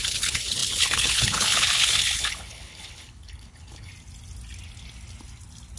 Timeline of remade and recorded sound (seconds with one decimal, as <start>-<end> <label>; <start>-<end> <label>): 0.0-3.9 remade; 3.9-5.8 recorded